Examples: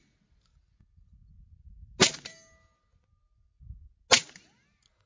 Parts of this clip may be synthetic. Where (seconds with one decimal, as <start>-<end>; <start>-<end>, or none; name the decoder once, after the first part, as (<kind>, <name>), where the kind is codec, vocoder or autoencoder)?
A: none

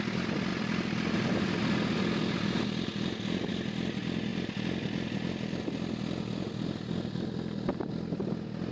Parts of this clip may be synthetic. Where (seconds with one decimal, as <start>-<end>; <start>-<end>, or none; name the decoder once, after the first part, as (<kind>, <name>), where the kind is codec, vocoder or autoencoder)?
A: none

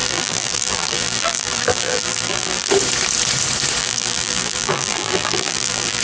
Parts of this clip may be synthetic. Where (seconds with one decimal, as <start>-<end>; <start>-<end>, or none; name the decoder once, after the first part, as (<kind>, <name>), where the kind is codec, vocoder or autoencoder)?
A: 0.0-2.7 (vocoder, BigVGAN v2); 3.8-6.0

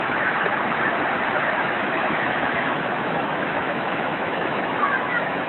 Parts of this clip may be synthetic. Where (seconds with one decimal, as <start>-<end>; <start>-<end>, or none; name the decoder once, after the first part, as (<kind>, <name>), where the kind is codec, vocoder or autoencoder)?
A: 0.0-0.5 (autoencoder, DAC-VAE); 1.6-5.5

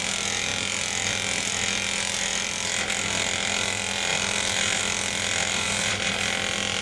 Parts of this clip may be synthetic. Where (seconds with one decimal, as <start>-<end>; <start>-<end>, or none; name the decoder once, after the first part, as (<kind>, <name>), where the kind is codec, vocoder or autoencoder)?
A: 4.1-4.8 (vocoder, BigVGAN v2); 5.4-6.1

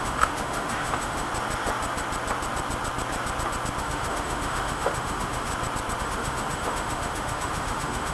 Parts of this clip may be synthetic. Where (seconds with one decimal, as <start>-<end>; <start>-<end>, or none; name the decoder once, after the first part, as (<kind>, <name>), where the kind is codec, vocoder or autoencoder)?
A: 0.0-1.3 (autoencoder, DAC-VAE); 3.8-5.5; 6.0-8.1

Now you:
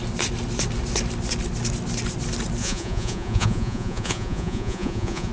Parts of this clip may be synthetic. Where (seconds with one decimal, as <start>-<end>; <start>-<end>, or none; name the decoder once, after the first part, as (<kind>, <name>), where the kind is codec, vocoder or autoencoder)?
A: 2.6-5.3 (vocoder, Vocos)

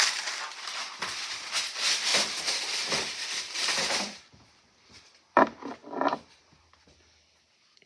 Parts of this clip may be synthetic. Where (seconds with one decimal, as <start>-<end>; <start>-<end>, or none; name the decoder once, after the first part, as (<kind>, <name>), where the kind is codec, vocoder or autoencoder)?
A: 2.1-5.0 (vocoder, BigVGAN v2)